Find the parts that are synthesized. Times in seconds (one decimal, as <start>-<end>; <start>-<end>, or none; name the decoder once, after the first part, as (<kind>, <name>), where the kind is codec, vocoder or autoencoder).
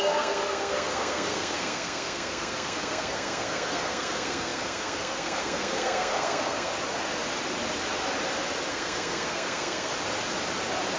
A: 0.0-6.7 (codec, SNAC); 8.7-9.9